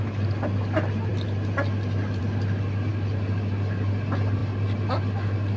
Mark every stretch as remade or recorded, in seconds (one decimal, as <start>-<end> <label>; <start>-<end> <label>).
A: 0.0-2.9 recorded; 2.9-3.5 remade; 3.5-5.6 recorded